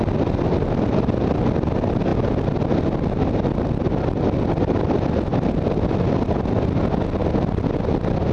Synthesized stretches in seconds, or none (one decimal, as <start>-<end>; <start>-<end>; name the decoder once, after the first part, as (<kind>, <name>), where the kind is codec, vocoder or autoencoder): none